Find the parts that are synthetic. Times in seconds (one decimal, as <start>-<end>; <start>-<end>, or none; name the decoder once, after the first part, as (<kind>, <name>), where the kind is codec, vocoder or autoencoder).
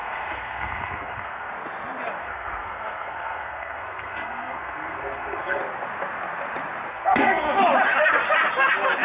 0.0-1.5 (codec, SNAC); 2.2-5.6; 6.9-7.6